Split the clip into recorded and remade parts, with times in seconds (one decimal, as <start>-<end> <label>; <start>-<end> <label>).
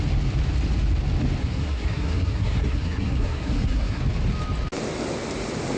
0.0-1.4 recorded; 1.4-4.0 remade; 4.0-5.8 recorded